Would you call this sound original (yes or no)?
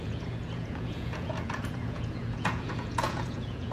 no